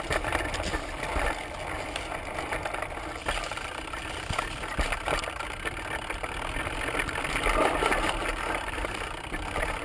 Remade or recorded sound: recorded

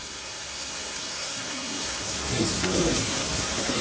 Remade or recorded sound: remade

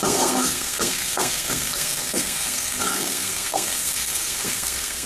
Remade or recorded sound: remade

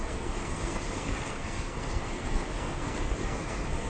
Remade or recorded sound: remade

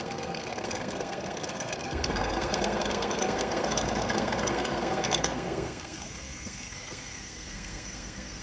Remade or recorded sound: remade